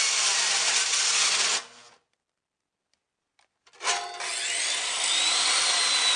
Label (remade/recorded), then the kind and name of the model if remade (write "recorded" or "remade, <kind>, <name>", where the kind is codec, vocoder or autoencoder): recorded